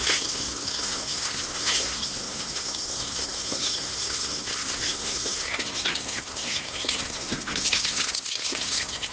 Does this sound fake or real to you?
fake